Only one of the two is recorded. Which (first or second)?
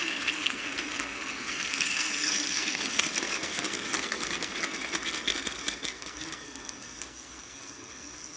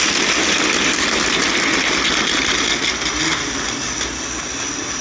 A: second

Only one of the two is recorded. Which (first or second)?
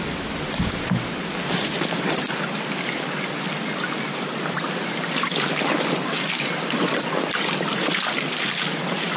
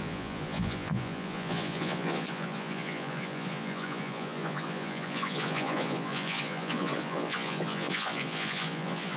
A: first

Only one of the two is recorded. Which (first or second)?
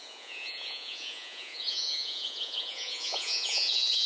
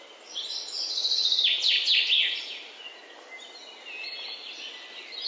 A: second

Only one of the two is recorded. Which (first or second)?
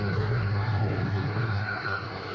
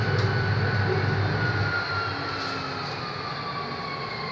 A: second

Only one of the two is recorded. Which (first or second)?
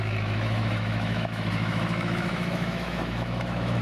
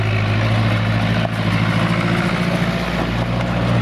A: second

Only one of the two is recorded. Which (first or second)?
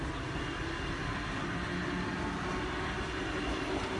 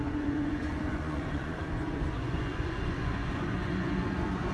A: first